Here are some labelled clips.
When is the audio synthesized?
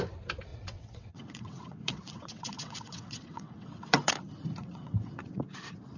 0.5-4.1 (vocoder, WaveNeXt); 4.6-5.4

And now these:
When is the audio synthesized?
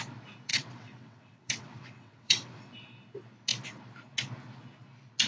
0.5-2.6 (vocoder, WaveNeXt)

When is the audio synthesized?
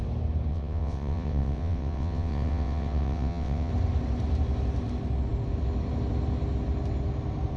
0.5-3.7 (vocoder, WaveNeXt)